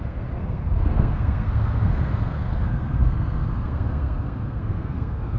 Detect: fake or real fake